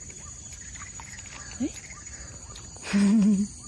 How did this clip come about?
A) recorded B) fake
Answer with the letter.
A